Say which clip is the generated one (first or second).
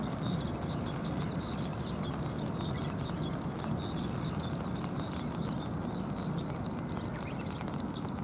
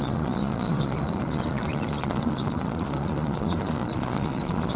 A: second